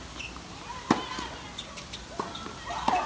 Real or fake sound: real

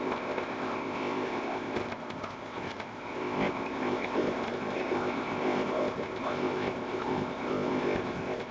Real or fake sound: fake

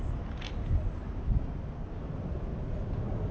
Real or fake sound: real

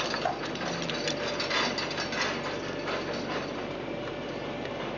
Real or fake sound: real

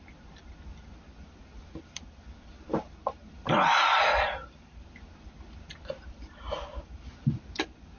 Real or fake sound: real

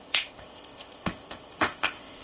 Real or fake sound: fake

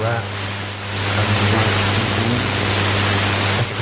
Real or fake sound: real